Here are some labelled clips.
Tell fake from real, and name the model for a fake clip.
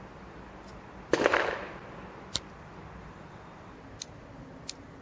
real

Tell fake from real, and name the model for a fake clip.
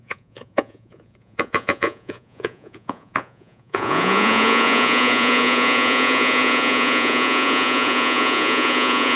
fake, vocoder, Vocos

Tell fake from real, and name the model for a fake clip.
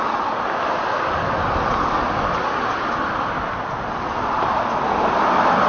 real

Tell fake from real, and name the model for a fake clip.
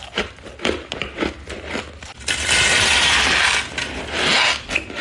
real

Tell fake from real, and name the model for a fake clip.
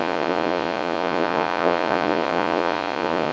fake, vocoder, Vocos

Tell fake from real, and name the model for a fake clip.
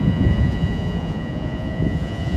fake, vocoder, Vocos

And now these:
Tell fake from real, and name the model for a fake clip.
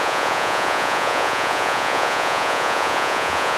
fake, vocoder, Vocos